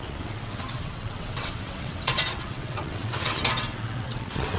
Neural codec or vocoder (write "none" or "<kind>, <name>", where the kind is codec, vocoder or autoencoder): vocoder, WaveNeXt